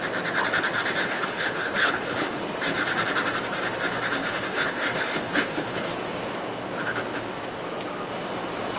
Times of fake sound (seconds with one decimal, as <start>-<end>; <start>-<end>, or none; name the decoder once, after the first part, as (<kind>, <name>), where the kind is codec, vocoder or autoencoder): 1.0-2.4 (codec, HILCodec); 4.2-5.9